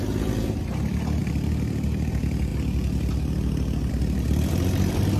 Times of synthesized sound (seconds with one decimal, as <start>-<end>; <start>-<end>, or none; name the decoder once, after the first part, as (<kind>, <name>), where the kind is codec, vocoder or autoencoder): none